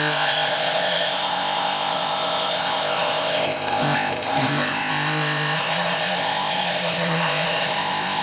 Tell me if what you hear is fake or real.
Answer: fake